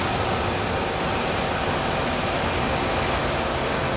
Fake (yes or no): no